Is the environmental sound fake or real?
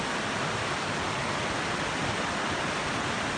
real